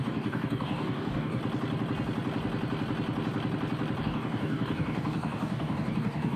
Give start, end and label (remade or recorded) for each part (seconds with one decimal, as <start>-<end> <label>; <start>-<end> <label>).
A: 0.0-1.4 remade; 1.4-4.0 recorded; 4.0-6.4 remade